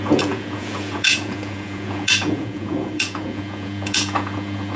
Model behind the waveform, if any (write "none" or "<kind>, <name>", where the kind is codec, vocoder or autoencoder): vocoder, Vocos